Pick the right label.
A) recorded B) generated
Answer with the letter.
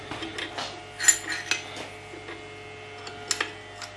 A